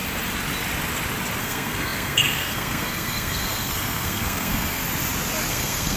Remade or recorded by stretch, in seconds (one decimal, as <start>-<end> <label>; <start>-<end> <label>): 0.0-1.4 recorded; 1.4-4.8 remade; 4.8-5.5 recorded; 5.5-6.0 remade